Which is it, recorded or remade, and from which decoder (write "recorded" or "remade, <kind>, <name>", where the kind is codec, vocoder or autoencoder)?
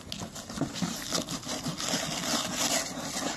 recorded